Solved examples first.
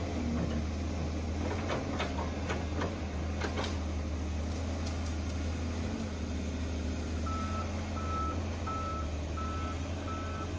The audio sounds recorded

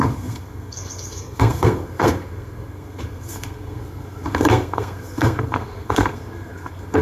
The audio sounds remade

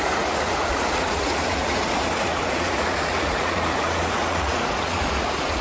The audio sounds remade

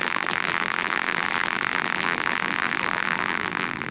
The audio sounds remade